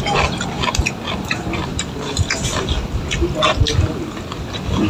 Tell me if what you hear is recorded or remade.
recorded